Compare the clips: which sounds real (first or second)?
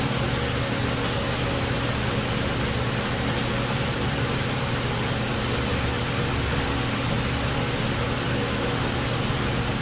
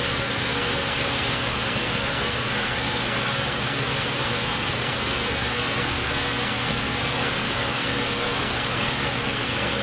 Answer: first